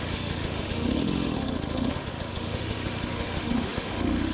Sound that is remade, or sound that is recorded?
remade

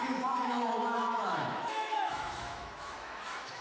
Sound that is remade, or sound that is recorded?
remade